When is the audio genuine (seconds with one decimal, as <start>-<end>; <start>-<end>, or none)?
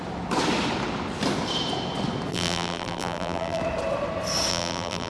0.0-2.3; 3.6-4.5